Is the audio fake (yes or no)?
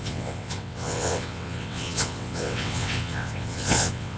yes